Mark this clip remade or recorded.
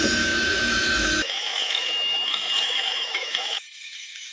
remade